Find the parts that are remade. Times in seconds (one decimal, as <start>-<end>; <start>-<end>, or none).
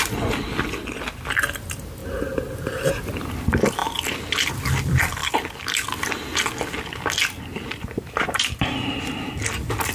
2.0-3.1; 7.5-9.4